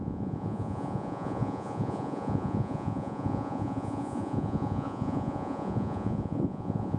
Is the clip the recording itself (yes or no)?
no